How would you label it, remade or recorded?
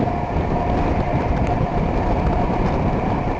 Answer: remade